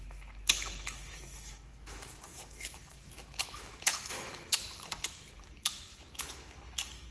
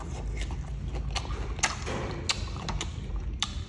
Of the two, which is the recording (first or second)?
second